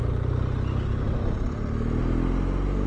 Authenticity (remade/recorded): recorded